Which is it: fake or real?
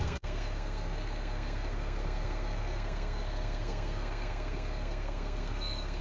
fake